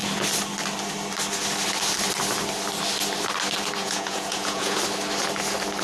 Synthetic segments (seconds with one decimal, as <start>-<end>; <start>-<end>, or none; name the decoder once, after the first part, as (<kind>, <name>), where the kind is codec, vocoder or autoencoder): 3.8-4.8 (vocoder, Vocos)